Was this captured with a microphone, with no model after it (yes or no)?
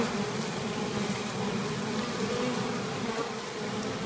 yes